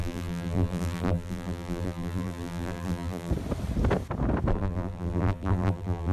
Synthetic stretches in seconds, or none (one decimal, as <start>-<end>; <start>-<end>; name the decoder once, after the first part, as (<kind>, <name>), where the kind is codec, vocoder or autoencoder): 0.0-3.3 (vocoder, BigVGAN v2); 4.5-6.1